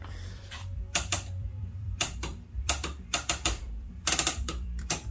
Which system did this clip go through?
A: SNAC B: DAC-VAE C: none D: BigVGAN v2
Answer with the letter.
D